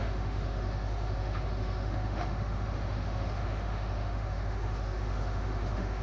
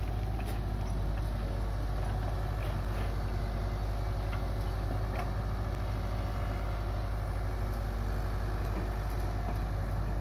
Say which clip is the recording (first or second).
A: second